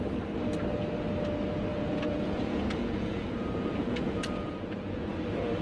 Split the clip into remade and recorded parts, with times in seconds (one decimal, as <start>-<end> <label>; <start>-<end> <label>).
0.0-1.7 recorded; 1.7-5.1 remade; 5.1-5.6 recorded